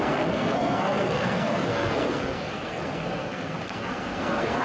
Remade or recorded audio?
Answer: remade